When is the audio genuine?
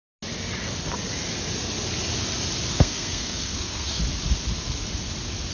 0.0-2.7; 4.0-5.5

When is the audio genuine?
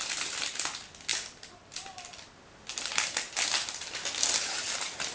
0.0-5.1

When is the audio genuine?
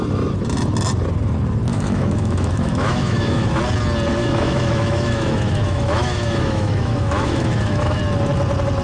0.0-1.7; 3.6-4.2; 8.0-8.8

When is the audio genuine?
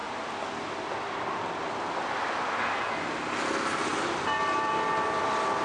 0.0-3.9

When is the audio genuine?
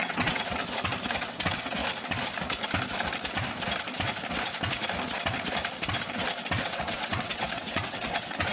0.6-1.2; 1.8-6.6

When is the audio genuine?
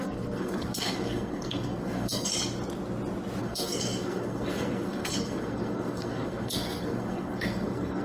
2.3-3.4